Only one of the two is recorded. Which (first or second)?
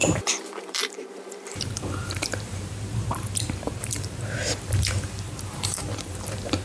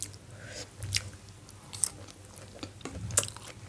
second